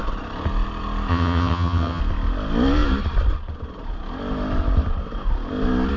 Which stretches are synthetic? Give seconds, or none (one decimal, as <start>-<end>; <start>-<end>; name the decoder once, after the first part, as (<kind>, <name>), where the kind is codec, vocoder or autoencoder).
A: 1.1-2.0 (vocoder, HiFi-GAN)